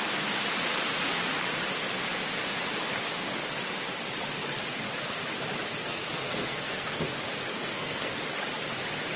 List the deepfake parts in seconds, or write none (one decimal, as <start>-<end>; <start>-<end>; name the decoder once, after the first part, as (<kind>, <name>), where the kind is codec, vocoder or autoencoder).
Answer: 5.8-7.0 (codec, SNAC); 7.5-8.1